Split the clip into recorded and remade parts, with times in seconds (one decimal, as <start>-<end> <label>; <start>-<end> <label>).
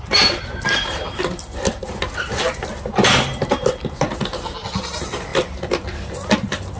0.0-6.8 recorded